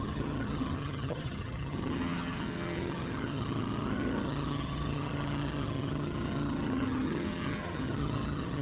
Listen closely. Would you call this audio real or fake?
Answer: fake